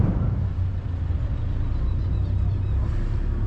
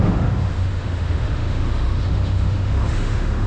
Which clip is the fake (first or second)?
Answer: second